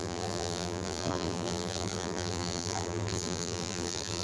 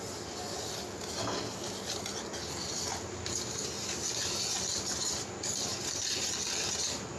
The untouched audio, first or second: second